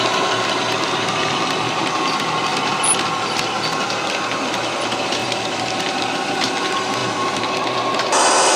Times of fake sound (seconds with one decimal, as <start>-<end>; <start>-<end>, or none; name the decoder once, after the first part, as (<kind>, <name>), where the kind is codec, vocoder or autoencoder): 2.5-3.4 (vocoder, BigVGAN v2); 5.2-6.0